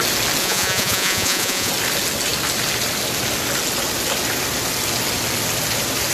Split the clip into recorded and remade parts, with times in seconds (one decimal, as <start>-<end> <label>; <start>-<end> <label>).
0.0-0.4 recorded; 0.4-1.7 remade; 1.7-6.1 recorded